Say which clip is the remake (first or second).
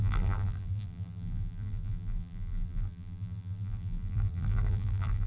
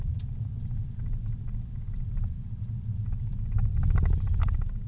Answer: first